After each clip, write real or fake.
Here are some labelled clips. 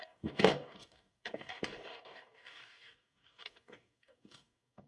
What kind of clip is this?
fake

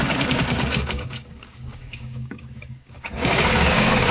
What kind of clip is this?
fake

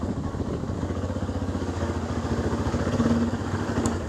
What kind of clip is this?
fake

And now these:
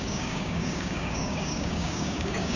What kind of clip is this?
fake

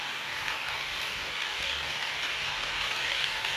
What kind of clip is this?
fake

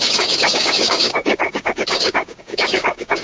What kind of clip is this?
fake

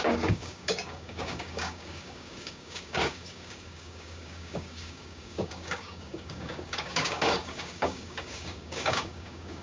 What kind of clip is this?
fake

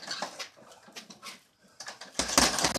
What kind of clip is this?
real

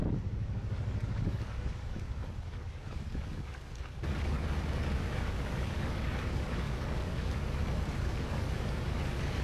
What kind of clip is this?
fake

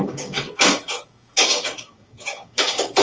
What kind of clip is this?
fake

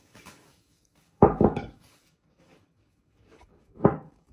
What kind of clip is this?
fake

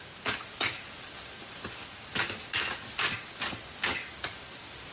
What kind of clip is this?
real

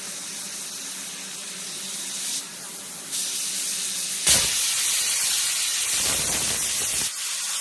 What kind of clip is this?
real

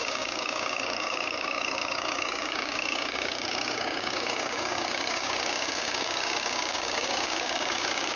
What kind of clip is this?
fake